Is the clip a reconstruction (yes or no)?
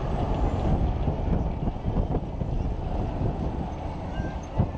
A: no